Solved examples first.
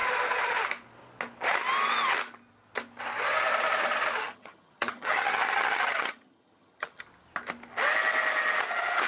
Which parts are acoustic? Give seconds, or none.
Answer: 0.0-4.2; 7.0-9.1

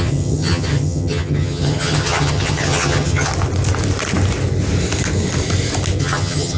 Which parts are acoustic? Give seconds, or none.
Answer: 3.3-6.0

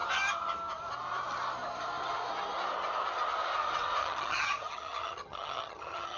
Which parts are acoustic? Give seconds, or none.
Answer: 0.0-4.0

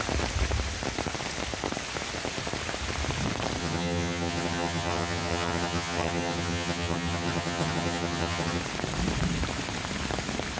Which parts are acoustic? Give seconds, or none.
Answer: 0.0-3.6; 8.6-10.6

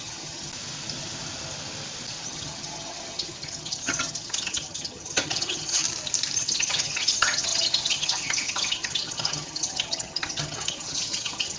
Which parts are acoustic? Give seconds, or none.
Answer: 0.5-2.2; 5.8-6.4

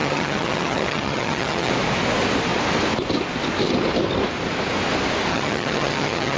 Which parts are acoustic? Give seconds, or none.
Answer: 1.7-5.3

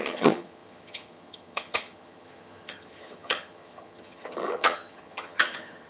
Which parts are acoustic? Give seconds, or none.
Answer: none